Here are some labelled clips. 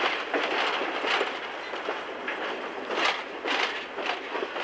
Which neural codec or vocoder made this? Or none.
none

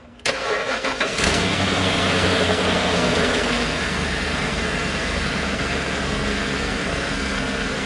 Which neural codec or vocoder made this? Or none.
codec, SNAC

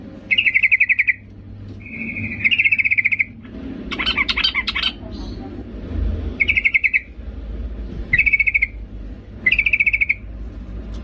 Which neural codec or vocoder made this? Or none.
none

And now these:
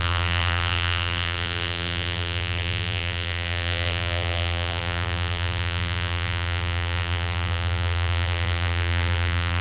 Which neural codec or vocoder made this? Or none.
vocoder, BigVGAN v2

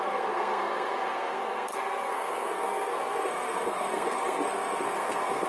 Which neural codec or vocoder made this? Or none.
codec, SNAC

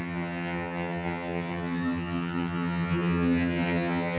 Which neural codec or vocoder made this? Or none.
vocoder, HiFi-GAN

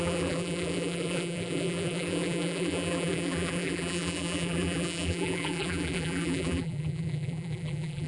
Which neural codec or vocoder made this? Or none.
vocoder, BigVGAN v2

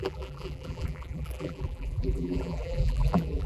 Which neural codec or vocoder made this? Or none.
vocoder, BigVGAN v2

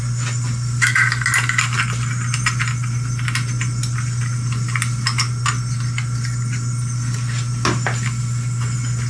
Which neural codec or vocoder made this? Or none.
none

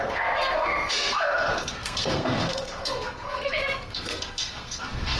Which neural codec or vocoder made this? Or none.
codec, SNAC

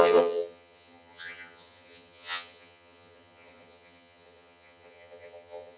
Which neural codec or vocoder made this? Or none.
vocoder, HiFi-GAN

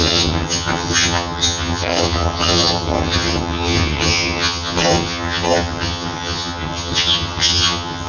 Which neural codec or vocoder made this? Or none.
vocoder, HiFi-GAN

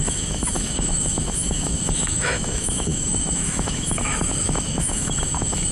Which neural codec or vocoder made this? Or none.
autoencoder, DAC-VAE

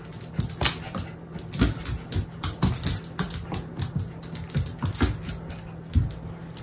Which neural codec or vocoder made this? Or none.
none